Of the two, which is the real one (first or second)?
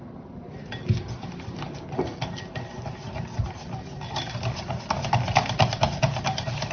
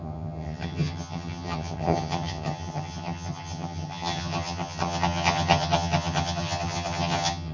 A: first